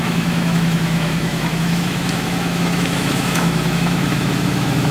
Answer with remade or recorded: remade